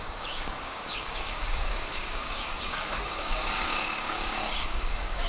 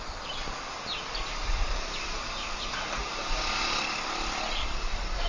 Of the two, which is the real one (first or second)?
second